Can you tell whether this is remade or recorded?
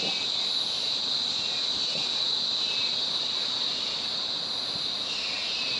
recorded